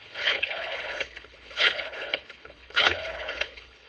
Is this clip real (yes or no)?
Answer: no